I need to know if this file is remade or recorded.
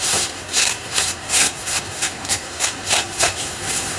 remade